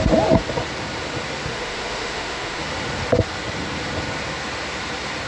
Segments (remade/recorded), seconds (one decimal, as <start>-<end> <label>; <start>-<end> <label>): 0.0-1.5 recorded; 1.5-2.6 remade; 2.6-5.3 recorded